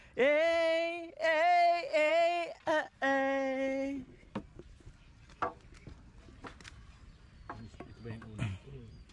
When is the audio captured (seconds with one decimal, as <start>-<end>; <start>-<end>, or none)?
0.0-9.1